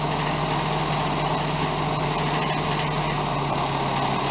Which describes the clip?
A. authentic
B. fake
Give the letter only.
A